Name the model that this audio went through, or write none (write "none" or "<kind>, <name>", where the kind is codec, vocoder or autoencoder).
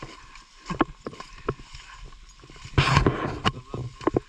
none